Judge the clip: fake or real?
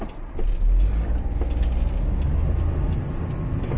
real